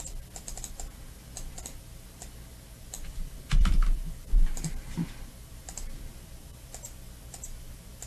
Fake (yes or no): yes